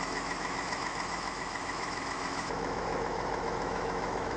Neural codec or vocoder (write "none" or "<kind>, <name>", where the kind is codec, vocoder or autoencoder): autoencoder, DAC-VAE